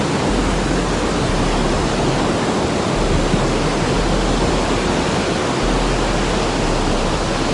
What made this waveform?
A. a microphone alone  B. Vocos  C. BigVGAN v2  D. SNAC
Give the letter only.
A